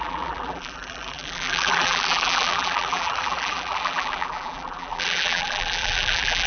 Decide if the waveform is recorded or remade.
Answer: remade